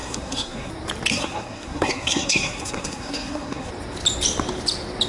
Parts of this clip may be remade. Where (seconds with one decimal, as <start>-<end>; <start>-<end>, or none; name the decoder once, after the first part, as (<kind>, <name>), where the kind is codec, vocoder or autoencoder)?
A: 0.0-0.7 (codec, SNAC); 1.1-3.7